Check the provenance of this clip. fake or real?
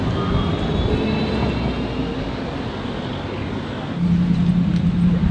real